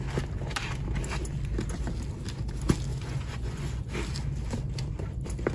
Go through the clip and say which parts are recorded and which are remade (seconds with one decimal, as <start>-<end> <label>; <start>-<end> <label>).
0.0-2.9 recorded; 2.9-3.9 remade; 3.9-5.5 recorded